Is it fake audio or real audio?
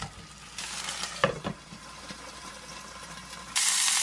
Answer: real